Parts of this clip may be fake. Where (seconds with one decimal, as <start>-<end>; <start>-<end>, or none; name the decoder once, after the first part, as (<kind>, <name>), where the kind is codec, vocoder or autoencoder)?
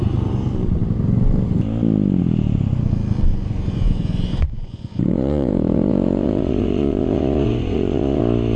3.3-8.2 (vocoder, Vocos)